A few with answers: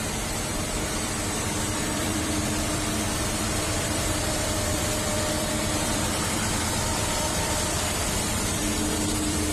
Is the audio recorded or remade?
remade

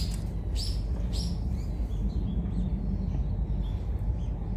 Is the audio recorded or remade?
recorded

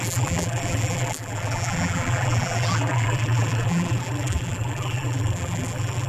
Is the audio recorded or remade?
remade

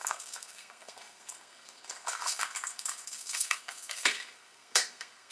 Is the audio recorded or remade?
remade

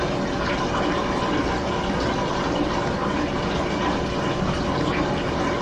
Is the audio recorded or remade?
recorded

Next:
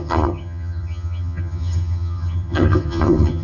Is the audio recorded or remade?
remade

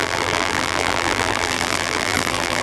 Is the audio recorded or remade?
remade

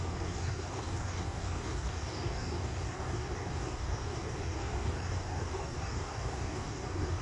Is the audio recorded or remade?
remade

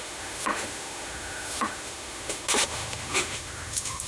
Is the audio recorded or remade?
remade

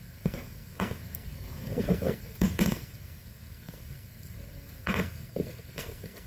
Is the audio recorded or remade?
remade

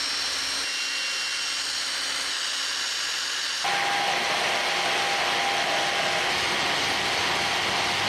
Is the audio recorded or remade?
recorded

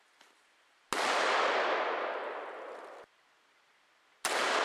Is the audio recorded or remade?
recorded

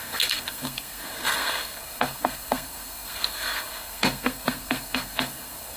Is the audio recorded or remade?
remade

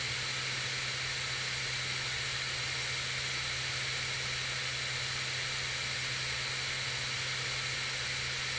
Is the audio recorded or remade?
recorded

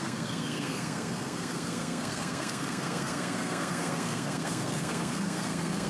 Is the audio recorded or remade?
remade